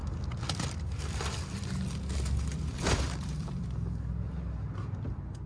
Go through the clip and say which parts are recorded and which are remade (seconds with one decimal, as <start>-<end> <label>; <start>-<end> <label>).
0.0-2.0 remade; 2.0-2.5 recorded; 2.5-3.6 remade; 3.6-5.5 recorded